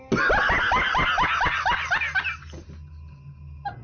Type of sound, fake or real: real